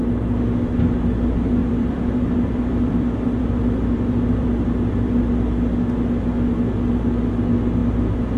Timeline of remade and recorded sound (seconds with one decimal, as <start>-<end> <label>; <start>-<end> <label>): 0.0-1.6 recorded; 1.6-5.1 remade; 5.1-8.4 recorded